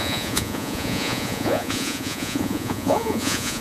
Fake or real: fake